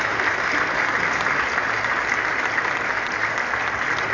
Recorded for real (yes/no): yes